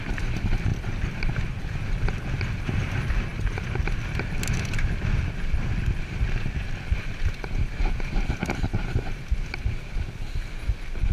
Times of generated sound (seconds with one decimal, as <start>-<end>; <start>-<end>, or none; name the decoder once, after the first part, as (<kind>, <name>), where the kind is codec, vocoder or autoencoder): none